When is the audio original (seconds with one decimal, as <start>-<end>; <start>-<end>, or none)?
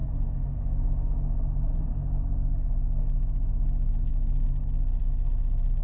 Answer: 0.0-5.8